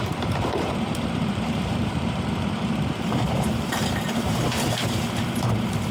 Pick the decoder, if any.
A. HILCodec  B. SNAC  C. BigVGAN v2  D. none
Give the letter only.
C